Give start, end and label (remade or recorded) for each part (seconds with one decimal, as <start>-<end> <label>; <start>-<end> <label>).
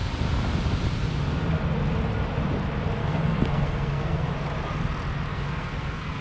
0.0-3.0 recorded; 3.0-4.3 remade; 4.3-5.3 recorded; 5.3-6.2 remade